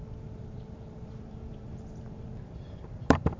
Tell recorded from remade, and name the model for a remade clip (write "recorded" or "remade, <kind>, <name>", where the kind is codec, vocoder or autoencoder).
remade, vocoder, BigVGAN v2